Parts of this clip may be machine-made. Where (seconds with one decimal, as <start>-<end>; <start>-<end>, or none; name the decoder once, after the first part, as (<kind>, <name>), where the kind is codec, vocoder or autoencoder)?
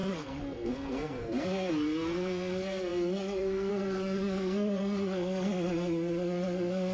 0.0-6.9 (codec, SNAC)